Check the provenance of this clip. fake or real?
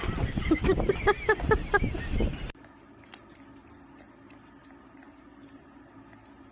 real